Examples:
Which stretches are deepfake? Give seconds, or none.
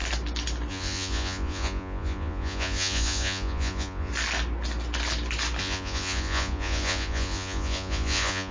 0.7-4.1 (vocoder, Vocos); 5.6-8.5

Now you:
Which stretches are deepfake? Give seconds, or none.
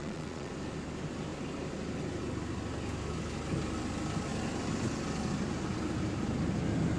0.0-0.5 (vocoder, Vocos)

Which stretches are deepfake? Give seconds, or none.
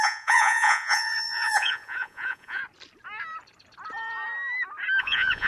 0.0-2.6 (vocoder, Vocos); 5.0-5.5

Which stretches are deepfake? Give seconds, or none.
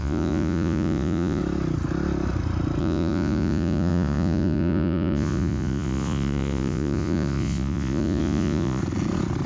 0.0-1.4 (vocoder, Vocos); 2.8-8.8